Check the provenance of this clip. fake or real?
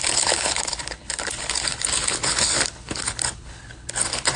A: fake